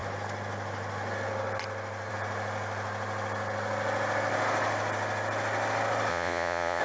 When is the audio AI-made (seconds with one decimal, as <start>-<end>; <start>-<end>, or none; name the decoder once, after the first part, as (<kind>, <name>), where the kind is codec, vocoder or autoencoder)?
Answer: 6.1-6.8 (vocoder, Vocos)